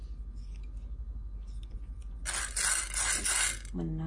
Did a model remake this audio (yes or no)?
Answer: no